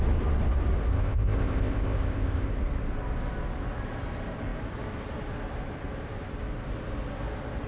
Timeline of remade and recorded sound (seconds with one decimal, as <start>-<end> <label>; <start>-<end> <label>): 0.0-0.9 recorded; 0.9-2.5 remade; 2.5-7.7 recorded